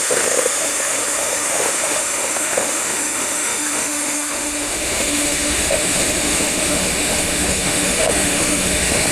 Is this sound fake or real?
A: fake